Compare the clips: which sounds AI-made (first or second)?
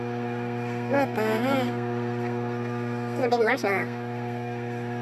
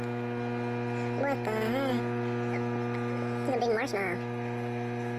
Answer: first